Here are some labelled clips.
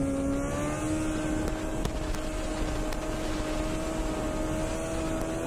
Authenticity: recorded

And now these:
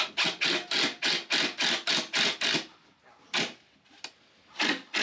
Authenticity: recorded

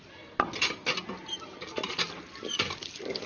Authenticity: recorded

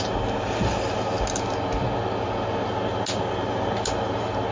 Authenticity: recorded